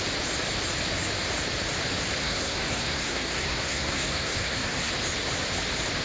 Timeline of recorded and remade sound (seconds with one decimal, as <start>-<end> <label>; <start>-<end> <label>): 0.0-2.2 recorded; 2.2-4.9 remade; 4.9-6.0 recorded